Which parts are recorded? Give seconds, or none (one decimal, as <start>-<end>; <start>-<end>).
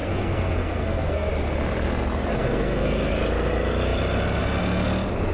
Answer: 1.3-2.3; 3.1-5.3